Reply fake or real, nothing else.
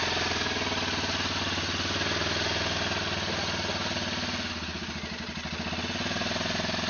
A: real